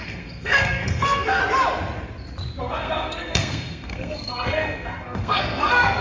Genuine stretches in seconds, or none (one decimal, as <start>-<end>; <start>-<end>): 1.4-2.6